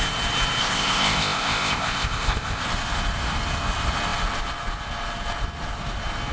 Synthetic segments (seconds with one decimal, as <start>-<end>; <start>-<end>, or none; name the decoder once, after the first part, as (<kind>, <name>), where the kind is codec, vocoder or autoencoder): 0.6-2.6 (codec, ZipCodec)